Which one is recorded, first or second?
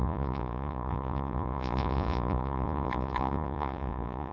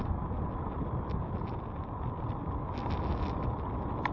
second